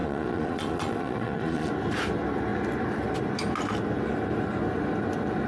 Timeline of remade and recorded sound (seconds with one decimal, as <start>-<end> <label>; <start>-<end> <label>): 0.0-1.7 remade; 1.7-5.5 recorded